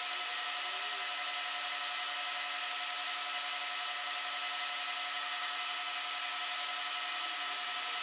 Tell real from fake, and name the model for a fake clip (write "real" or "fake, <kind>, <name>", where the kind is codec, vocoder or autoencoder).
real